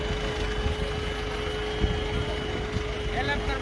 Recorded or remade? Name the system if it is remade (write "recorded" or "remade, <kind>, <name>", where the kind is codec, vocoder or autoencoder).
recorded